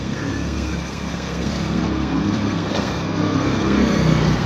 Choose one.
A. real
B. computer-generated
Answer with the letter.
B